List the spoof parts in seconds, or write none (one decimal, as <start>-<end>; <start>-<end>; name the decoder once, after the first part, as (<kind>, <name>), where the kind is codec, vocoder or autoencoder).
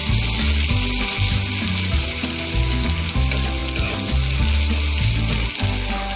none